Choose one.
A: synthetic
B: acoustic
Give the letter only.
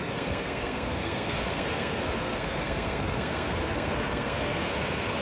A